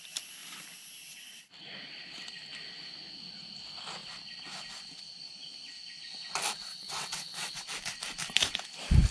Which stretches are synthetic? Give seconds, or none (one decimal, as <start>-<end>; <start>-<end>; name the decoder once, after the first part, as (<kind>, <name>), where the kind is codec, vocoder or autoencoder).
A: 6.7-7.6 (vocoder, WaveNeXt)